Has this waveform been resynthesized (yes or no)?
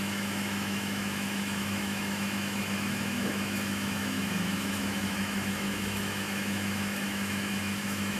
yes